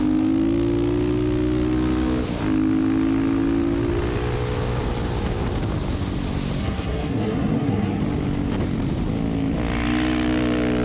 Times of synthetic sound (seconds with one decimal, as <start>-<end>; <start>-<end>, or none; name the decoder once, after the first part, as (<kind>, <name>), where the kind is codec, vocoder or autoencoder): 6.6-8.0 (codec, SNAC)